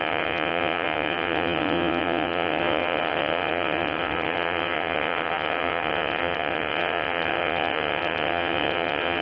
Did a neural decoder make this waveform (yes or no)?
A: yes